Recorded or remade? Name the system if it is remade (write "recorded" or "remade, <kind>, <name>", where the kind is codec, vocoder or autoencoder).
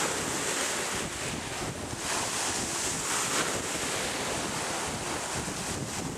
recorded